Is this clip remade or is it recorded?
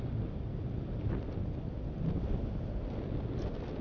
recorded